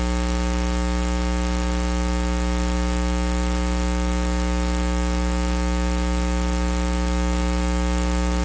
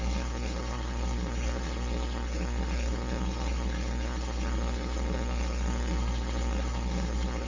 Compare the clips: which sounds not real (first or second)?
second